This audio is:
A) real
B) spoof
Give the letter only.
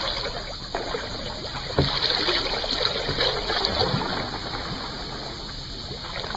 A